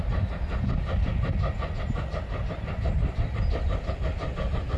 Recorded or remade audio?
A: recorded